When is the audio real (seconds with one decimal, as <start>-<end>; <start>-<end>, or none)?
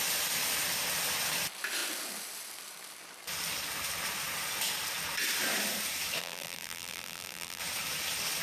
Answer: 0.0-6.2; 7.6-8.4